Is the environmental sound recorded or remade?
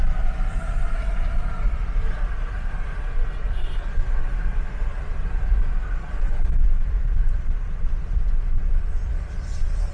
remade